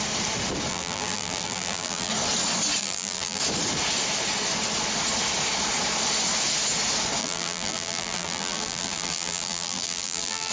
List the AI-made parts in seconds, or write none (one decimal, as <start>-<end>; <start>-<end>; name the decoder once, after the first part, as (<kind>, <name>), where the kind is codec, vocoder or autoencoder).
0.7-2.1 (vocoder, BigVGAN v2); 2.8-3.4; 7.2-10.5

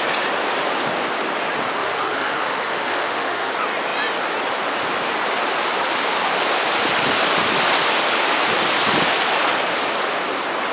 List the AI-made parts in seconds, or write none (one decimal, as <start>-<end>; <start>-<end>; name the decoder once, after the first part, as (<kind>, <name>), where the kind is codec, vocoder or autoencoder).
1.8-3.5 (autoencoder, DAC-VAE)